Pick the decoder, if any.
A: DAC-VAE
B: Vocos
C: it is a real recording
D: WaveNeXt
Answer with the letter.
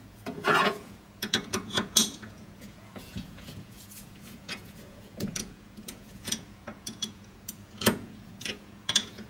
B